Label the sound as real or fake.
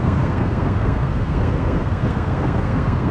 fake